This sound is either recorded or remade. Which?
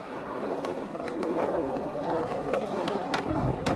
remade